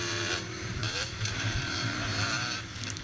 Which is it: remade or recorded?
remade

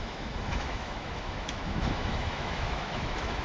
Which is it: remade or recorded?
remade